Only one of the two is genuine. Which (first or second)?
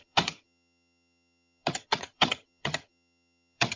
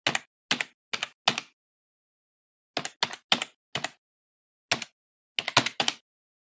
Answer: second